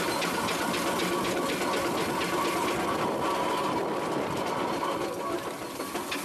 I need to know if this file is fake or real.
real